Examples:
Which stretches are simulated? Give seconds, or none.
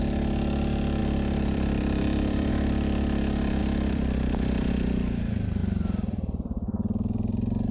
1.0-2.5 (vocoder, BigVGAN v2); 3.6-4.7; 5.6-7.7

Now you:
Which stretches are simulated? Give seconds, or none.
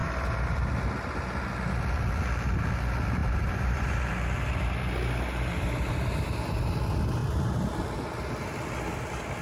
0.0-0.6 (vocoder, BigVGAN v2); 3.2-4.5; 5.5-6.6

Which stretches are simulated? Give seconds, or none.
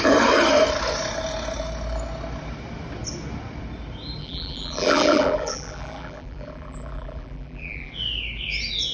4.2-7.9 (vocoder, BigVGAN v2)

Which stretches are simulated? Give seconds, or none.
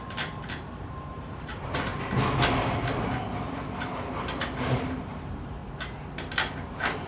0.0-1.9 (vocoder, BigVGAN v2); 4.8-5.6; 6.5-7.1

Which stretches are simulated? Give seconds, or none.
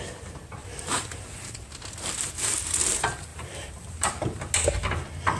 0.6-1.7 (vocoder, BigVGAN v2); 3.3-4.1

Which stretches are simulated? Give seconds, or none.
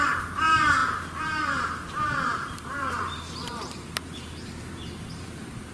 0.0-5.7 (vocoder, BigVGAN v2)